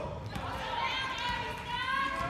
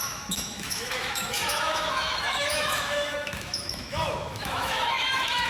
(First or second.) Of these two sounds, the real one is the first